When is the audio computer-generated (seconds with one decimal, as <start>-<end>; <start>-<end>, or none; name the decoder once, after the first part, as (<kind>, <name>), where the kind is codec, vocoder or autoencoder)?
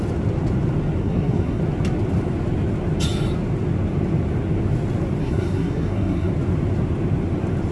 1.0-1.6 (codec, SNAC); 5.2-6.3